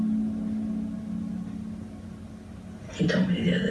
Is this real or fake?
real